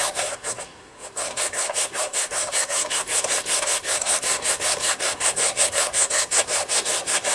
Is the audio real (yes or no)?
no